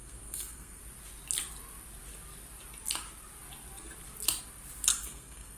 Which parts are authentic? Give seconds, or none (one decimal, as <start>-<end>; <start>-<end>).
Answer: 0.8-4.9